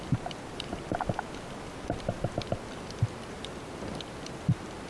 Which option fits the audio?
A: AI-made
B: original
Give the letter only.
B